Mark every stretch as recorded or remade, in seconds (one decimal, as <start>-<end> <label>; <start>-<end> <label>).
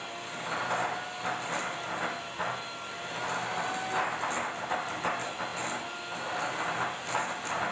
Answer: 0.0-7.7 recorded